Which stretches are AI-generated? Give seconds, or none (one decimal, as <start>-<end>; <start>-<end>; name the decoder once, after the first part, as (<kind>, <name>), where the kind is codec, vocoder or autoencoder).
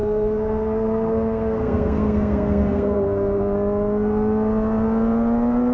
0.0-3.4 (codec, SNAC)